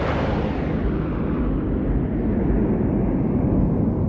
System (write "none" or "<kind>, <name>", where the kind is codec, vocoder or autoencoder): none